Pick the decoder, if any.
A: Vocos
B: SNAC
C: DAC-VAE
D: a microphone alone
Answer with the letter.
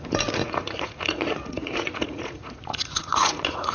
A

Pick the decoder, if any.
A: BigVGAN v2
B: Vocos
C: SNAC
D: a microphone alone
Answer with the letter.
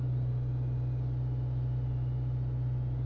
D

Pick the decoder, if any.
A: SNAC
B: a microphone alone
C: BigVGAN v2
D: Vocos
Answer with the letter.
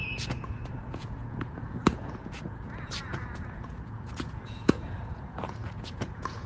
D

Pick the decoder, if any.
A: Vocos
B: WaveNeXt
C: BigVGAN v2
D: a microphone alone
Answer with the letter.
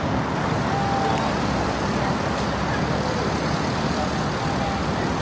D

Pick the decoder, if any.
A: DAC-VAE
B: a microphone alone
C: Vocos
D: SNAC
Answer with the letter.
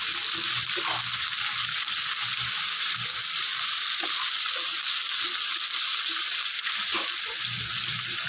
B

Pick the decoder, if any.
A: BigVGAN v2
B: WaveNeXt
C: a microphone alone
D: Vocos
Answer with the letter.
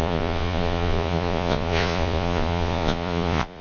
D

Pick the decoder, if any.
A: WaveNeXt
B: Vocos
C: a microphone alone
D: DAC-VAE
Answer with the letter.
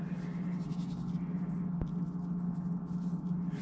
C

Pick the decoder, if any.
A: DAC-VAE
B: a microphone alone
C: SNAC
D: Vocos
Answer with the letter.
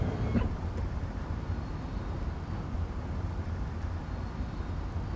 B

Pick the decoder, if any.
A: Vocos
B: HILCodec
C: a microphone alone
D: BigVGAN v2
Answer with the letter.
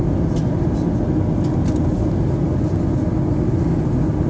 C